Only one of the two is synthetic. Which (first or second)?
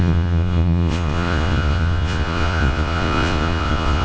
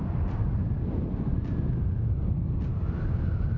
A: first